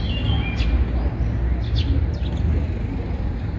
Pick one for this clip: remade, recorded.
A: recorded